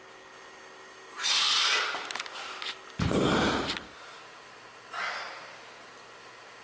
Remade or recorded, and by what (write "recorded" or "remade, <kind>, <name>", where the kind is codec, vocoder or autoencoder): recorded